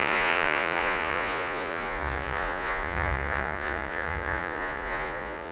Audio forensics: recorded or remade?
remade